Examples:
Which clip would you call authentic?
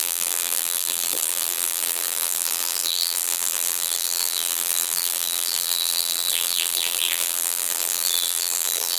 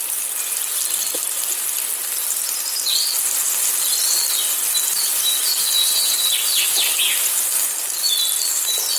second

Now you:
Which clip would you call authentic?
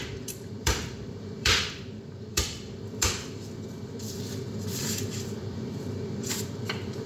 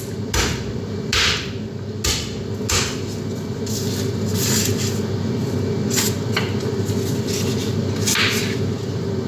second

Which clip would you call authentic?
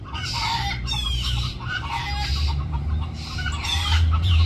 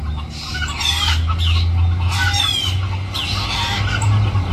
second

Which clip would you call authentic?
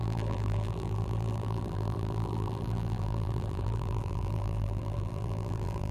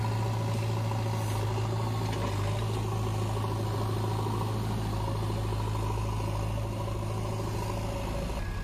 second